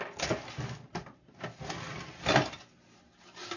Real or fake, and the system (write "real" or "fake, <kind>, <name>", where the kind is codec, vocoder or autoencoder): real